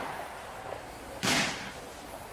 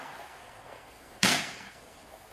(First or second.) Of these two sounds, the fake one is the second